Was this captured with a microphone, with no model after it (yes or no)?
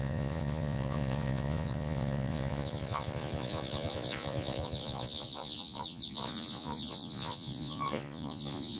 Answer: no